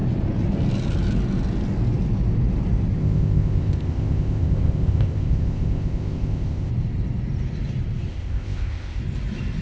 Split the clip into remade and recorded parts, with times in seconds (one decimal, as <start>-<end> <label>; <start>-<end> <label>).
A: 0.0-3.0 recorded; 3.0-6.7 remade; 6.7-8.1 recorded; 8.1-9.0 remade; 9.0-9.6 recorded